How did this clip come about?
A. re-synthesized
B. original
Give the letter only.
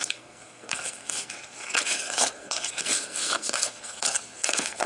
A